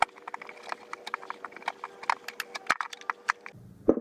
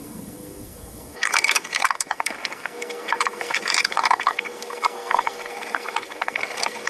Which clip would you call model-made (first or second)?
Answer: second